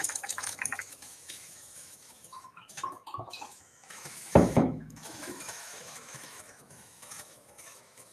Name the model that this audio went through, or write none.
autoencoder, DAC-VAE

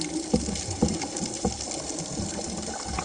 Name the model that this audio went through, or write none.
none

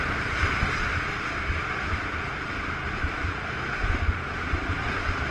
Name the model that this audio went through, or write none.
none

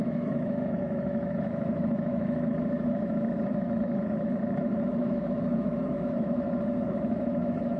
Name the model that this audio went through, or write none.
autoencoder, DAC-VAE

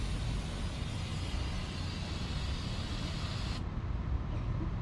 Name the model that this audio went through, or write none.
none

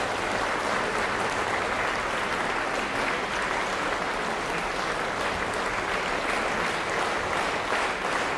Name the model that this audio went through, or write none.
none